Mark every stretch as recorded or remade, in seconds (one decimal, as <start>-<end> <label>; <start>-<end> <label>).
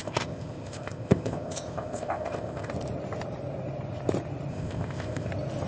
0.0-2.7 remade; 2.7-4.5 recorded; 4.5-5.3 remade; 5.3-5.7 recorded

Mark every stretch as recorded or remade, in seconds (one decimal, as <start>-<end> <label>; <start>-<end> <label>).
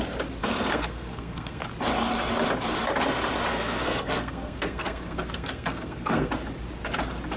0.0-0.4 recorded; 0.4-1.6 remade; 1.6-3.5 recorded; 3.5-6.3 remade; 6.3-7.4 recorded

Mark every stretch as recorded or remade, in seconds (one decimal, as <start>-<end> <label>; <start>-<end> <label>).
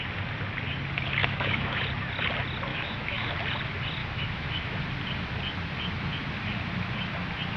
0.0-1.2 recorded; 1.2-1.8 remade; 1.8-2.7 recorded; 2.7-3.3 remade; 3.3-4.0 recorded; 4.0-4.8 remade; 4.8-7.6 recorded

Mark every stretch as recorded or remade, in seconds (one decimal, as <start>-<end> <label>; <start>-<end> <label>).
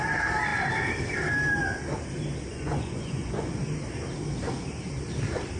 0.0-2.5 recorded; 2.5-3.5 remade; 3.5-5.6 recorded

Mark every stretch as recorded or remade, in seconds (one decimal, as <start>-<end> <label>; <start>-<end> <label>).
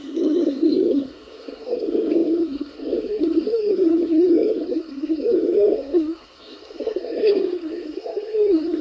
0.0-8.8 remade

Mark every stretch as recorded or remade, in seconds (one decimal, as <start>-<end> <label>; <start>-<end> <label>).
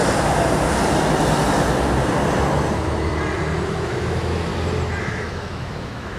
0.0-3.7 recorded; 3.7-4.5 remade; 4.5-5.0 recorded; 5.0-6.2 remade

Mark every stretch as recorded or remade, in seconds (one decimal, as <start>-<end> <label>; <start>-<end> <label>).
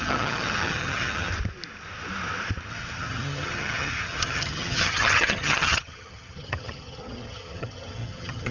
0.0-1.3 remade; 1.3-2.7 recorded; 2.7-8.5 remade